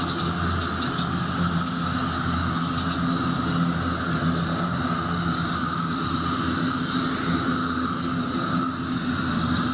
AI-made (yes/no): no